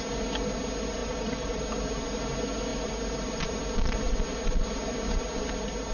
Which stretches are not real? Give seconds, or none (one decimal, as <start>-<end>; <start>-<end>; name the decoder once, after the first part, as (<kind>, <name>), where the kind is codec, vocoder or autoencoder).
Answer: 1.0-1.6 (vocoder, BigVGAN v2)